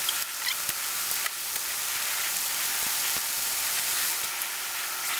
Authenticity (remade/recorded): recorded